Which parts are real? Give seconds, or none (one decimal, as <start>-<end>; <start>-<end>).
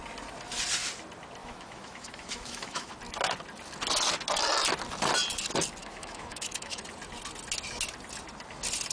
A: 0.0-1.4; 2.9-5.8; 6.8-8.9